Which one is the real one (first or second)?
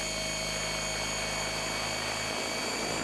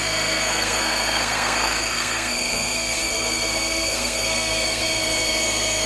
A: first